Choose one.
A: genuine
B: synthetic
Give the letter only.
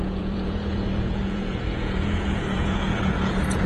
B